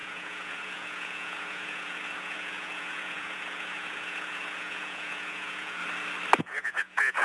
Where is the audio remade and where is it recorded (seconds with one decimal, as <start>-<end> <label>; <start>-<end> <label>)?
0.0-5.8 remade; 5.8-6.4 recorded; 6.4-7.2 remade